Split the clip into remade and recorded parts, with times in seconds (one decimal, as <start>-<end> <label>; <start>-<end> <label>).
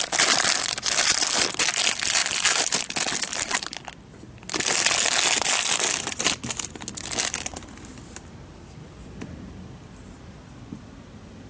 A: 0.0-11.5 recorded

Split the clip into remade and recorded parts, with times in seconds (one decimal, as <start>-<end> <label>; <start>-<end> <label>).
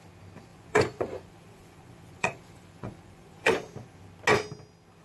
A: 0.0-0.5 recorded; 0.5-3.5 remade; 3.5-5.0 recorded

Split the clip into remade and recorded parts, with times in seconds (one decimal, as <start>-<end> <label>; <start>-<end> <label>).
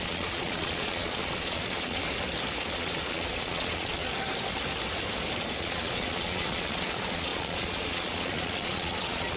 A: 0.0-2.0 remade; 2.0-2.7 recorded; 2.7-4.1 remade; 4.1-5.6 recorded; 5.6-9.4 remade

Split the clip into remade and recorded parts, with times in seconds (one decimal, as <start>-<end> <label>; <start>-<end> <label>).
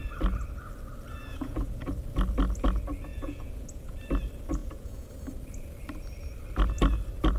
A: 0.0-1.2 recorded; 1.2-1.9 remade; 1.9-3.1 recorded; 3.1-4.0 remade; 4.0-4.6 recorded; 4.6-5.1 remade; 5.1-7.4 recorded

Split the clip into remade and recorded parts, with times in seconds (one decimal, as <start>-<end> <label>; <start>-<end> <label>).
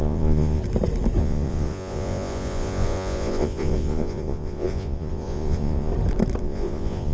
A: 0.0-0.6 remade; 0.6-1.2 recorded; 1.2-5.9 remade; 5.9-6.4 recorded; 6.4-7.1 remade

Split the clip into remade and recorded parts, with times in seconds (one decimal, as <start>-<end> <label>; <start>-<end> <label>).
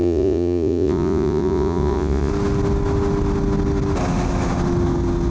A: 0.0-2.3 remade; 2.3-5.3 recorded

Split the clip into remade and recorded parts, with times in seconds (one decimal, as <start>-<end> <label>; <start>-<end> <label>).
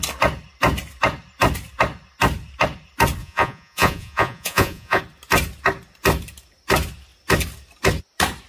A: 0.0-3.2 recorded; 3.2-5.0 remade; 5.0-8.5 recorded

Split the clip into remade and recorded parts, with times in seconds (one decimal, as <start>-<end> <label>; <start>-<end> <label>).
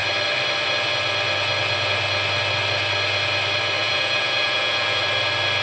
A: 0.0-3.8 recorded; 3.8-5.0 remade; 5.0-5.6 recorded